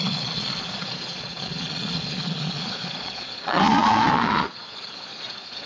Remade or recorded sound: remade